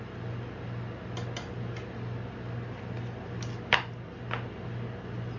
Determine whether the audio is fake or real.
real